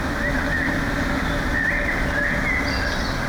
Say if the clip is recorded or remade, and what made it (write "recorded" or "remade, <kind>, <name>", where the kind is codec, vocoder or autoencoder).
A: recorded